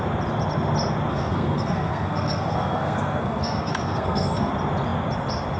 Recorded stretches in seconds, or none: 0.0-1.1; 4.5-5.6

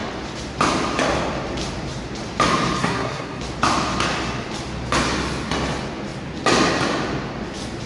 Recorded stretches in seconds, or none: 0.0-2.8; 3.4-7.9

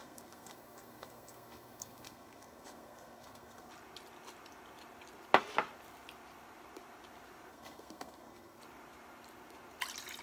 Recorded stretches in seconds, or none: 3.7-7.5; 8.6-10.2

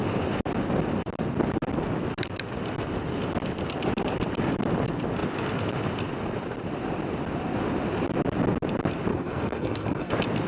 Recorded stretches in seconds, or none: 0.0-9.1; 10.1-10.5

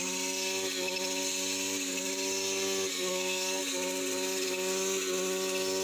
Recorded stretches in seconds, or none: 0.0-2.9; 3.6-5.8